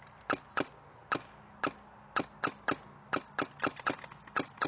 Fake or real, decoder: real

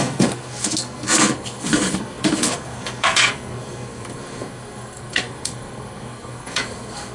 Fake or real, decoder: fake, codec, SNAC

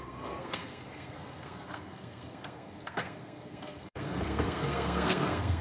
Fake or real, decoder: fake, codec, SNAC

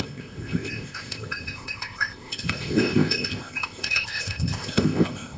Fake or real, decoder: fake, codec, ZipCodec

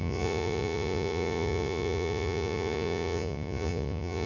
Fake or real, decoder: fake, vocoder, Vocos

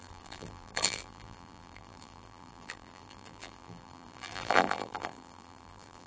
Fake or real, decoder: fake, vocoder, BigVGAN v2